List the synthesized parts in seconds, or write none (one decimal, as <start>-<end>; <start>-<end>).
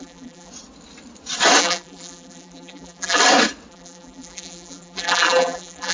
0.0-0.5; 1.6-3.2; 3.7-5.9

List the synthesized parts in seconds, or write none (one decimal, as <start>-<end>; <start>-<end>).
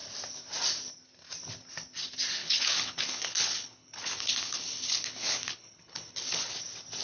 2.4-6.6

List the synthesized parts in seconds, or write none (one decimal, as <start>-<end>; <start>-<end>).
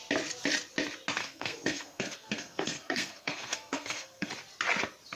1.2-4.3